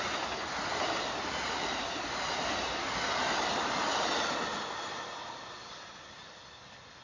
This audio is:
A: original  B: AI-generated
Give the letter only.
A